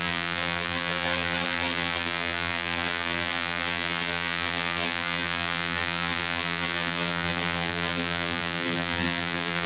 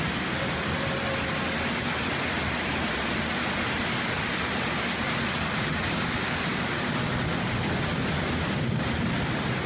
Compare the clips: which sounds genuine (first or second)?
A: second